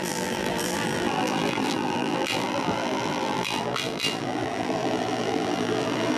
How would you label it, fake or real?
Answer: fake